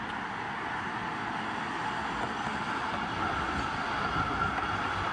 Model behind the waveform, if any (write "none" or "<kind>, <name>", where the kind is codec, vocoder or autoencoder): none